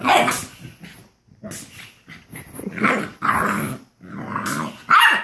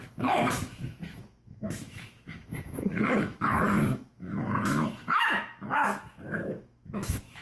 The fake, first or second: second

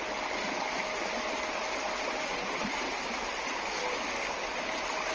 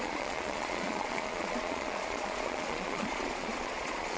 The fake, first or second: second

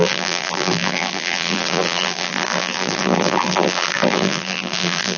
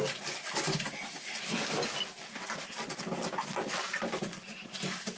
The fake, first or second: first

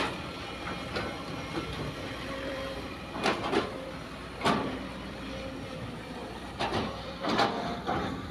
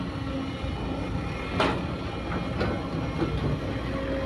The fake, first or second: first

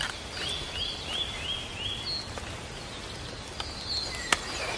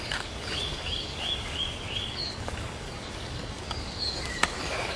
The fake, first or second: second